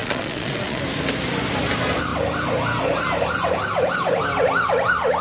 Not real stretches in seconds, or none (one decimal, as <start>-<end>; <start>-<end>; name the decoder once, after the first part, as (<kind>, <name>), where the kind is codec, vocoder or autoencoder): 0.0-0.8 (vocoder, Vocos)